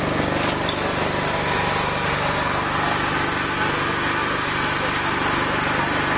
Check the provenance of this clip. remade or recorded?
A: recorded